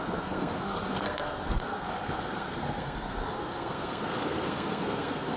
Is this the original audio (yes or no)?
no